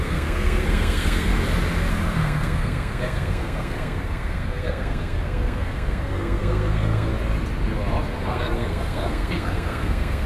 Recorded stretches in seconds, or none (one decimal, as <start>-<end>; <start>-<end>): 1.3-1.9; 7.1-8.1